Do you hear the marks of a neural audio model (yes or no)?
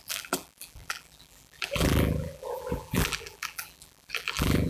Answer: yes